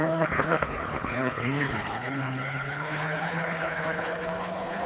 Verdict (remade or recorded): remade